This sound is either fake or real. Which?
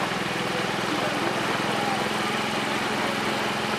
real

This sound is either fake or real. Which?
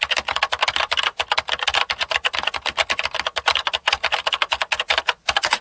real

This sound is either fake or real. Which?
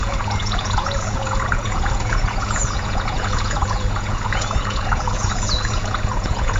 fake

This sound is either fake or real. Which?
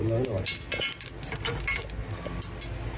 real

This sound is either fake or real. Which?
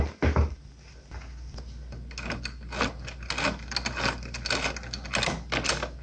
real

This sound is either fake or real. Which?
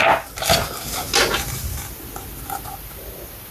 real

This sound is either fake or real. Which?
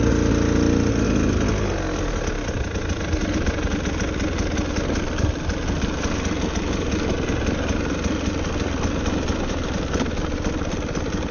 real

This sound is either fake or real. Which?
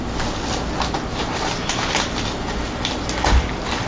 real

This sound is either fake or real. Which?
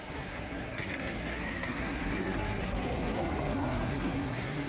fake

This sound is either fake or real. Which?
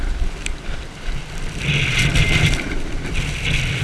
real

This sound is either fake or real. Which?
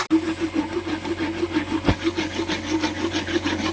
real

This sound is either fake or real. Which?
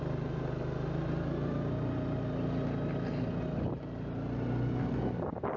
real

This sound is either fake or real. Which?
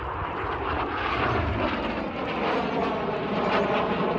real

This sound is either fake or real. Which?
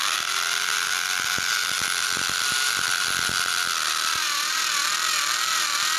real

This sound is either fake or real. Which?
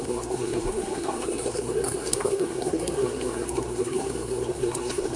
fake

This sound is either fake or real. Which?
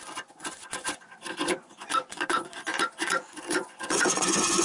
fake